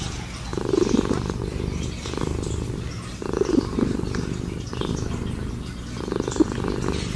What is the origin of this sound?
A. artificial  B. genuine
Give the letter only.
B